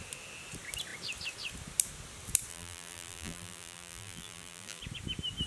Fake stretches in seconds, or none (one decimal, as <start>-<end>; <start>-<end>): 2.5-4.8